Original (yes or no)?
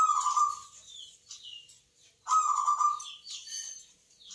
yes